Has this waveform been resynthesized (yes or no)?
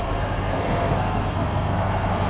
yes